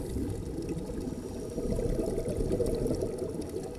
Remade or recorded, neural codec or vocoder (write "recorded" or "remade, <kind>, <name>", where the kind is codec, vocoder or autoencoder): recorded